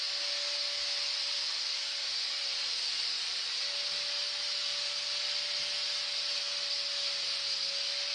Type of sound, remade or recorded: recorded